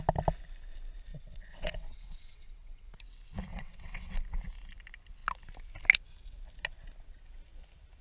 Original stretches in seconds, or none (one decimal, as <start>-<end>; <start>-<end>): 0.0-1.1; 3.0-3.5; 4.1-8.0